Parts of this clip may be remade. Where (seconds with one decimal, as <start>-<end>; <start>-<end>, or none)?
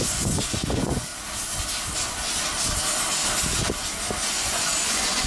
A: 0.0-1.1; 4.3-5.3